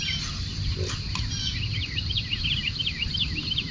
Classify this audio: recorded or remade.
recorded